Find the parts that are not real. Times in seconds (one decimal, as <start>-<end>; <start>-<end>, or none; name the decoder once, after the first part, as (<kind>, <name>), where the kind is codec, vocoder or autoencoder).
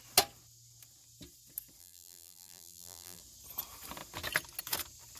1.8-3.2 (vocoder, BigVGAN v2)